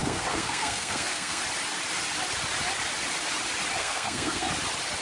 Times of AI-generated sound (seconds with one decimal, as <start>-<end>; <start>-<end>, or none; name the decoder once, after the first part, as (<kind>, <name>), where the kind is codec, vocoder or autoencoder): 0.0-1.4 (codec, SNAC); 3.8-4.5